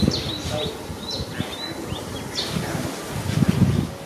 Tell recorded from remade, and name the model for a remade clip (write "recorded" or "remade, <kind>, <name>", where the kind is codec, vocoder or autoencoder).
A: recorded